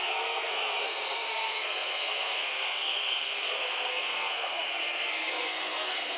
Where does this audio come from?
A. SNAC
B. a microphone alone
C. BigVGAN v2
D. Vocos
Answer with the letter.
A